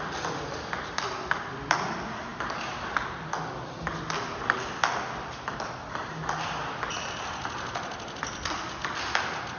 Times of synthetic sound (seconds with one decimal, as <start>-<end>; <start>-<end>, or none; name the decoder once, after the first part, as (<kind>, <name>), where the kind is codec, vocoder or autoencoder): none